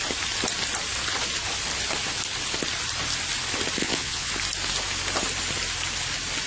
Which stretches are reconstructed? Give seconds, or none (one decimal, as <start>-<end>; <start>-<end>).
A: 3.8-4.3